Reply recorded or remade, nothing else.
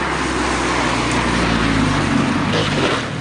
recorded